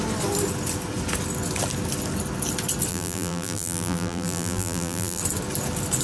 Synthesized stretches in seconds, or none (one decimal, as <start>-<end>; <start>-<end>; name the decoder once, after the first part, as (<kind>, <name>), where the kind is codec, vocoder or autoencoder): 2.9-5.2 (vocoder, BigVGAN v2)

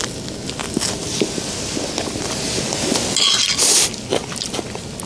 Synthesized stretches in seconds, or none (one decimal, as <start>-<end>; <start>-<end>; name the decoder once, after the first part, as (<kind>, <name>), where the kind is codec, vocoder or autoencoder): none

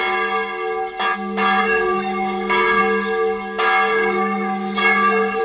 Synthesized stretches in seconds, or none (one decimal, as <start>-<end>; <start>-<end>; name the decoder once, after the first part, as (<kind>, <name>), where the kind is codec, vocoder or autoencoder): 1.6-2.8 (codec, SNAC); 3.9-5.4

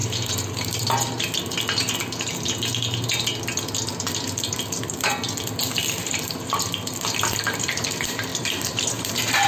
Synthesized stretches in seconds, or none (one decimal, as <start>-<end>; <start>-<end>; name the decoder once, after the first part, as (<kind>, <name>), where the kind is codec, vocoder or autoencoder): 0.0-1.2 (vocoder, BigVGAN v2); 8.3-9.1

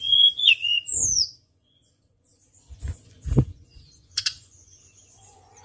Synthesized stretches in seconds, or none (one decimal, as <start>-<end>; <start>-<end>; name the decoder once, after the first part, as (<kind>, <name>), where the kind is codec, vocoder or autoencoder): 0.0-5.6 (vocoder, Vocos)

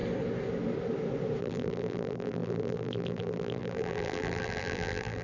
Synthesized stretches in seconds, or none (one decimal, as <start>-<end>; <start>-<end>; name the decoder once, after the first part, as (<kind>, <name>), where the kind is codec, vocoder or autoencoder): 1.4-5.2 (vocoder, BigVGAN v2)